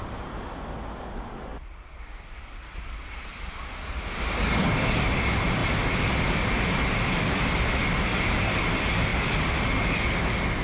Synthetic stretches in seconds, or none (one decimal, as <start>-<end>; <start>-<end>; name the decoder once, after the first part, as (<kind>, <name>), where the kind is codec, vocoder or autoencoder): 1.5-4.5 (vocoder, BigVGAN v2); 8.1-8.6